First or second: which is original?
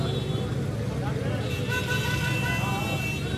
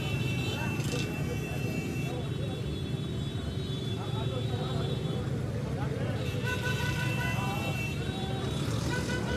first